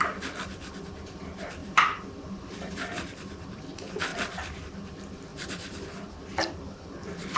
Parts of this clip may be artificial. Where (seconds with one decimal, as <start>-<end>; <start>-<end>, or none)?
1.6-3.6; 5.3-6.7